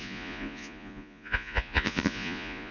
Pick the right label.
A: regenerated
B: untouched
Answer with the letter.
A